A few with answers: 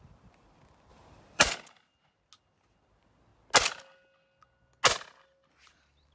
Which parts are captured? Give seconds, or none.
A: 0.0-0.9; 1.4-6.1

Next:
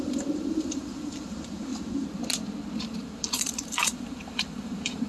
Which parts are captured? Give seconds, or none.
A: 1.7-2.8

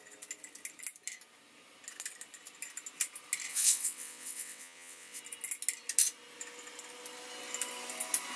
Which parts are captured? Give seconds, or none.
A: 0.0-3.5; 5.2-8.4